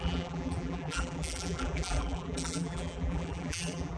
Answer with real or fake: fake